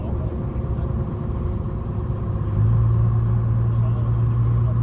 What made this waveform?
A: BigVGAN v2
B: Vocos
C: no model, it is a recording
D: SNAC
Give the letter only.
C